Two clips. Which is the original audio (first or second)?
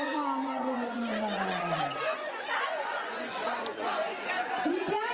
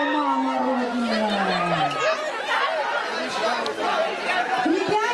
second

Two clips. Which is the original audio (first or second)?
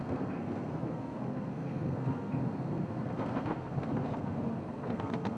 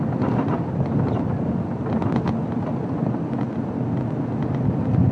second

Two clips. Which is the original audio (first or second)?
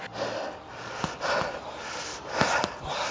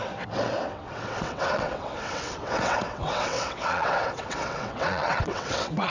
first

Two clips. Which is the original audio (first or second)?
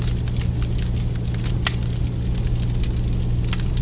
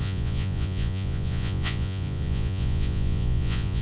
first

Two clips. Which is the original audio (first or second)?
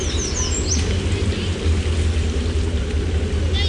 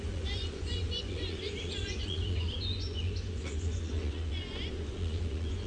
first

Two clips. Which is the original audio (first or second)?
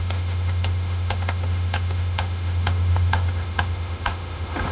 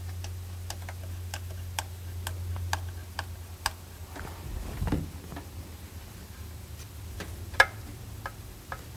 second